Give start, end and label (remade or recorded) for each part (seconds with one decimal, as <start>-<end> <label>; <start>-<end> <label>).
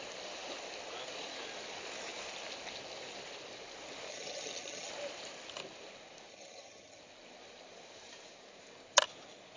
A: 0.0-4.1 recorded; 4.1-4.9 remade; 4.9-6.3 recorded; 6.3-7.0 remade; 7.0-9.6 recorded